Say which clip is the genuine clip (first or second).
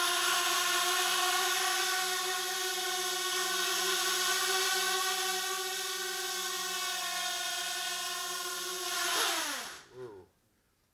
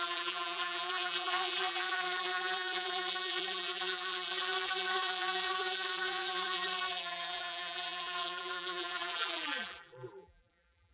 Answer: first